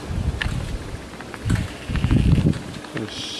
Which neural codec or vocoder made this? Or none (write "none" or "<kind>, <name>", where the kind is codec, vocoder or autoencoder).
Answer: none